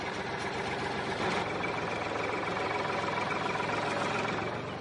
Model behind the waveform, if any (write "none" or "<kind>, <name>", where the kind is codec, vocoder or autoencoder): none